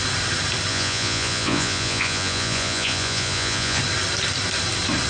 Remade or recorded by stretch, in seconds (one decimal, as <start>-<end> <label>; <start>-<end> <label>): 0.0-0.7 recorded; 0.7-3.8 remade; 3.8-5.1 recorded